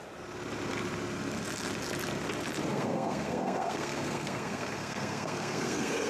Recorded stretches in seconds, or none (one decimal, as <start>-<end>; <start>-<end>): 0.0-2.7